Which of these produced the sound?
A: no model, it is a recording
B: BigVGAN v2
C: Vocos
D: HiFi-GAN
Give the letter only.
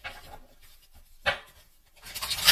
A